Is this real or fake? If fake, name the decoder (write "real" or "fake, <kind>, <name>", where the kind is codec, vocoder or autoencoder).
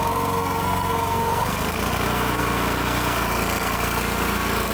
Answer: fake, codec, SNAC